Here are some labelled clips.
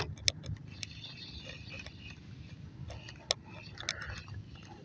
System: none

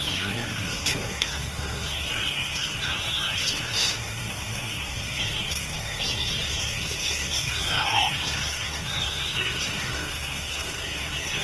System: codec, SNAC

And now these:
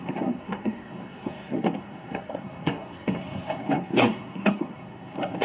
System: codec, SNAC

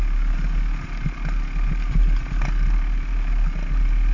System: none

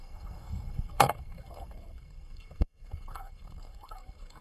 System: codec, SNAC